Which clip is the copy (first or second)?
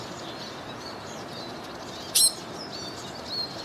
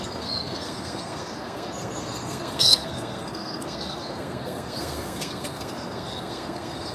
second